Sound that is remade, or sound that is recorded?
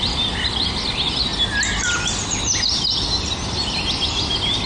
recorded